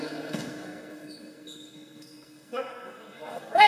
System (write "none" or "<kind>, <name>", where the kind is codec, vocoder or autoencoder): codec, SNAC